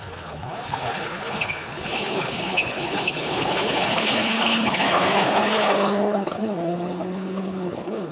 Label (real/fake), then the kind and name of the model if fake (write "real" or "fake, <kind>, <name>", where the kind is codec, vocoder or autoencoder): fake, codec, HILCodec